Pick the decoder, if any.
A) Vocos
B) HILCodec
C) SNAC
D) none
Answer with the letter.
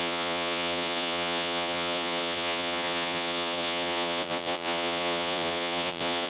A